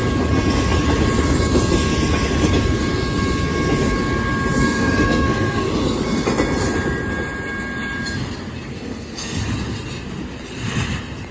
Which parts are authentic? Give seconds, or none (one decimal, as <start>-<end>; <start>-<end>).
0.0-4.6; 5.8-8.7; 9.4-11.3